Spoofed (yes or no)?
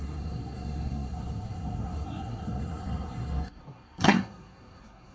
yes